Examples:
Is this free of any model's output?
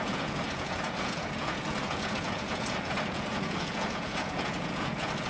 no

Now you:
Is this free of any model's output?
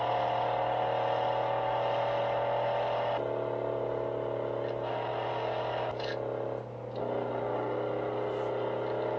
yes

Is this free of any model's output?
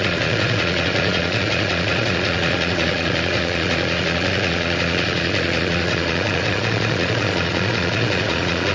no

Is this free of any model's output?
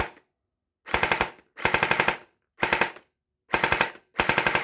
yes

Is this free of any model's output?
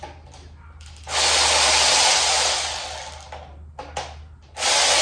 yes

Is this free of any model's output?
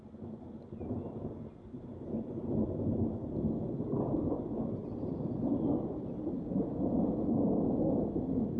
yes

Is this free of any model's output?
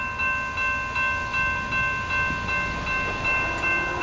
yes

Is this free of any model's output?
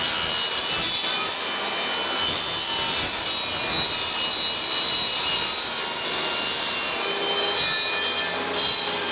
yes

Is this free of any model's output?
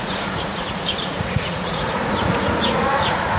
no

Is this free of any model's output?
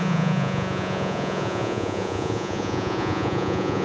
no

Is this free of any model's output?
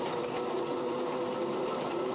yes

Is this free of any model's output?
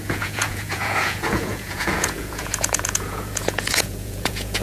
no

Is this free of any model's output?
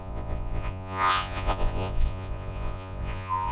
no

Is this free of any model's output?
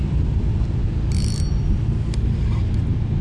yes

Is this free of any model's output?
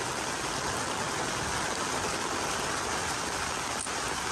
yes